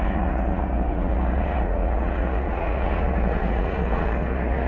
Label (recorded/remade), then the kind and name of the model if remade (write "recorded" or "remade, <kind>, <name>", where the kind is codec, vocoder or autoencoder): remade, vocoder, Vocos